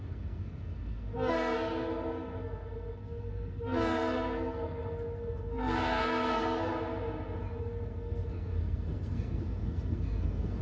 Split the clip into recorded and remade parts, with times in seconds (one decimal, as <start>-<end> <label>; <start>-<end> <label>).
0.0-6.7 remade; 6.7-7.6 recorded; 7.6-10.6 remade